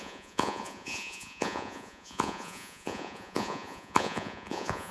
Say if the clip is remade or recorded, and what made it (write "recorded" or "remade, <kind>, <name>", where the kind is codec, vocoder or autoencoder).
remade, vocoder, Vocos